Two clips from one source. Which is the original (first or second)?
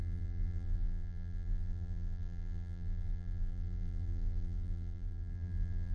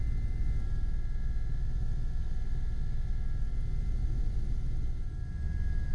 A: second